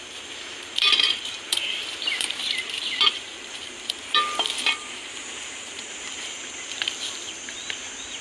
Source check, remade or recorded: remade